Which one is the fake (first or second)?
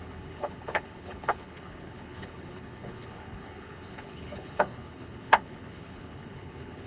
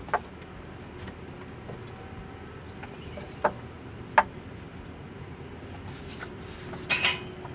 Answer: first